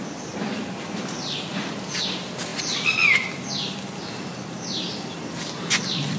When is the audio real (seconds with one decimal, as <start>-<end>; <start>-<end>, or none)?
0.0-6.2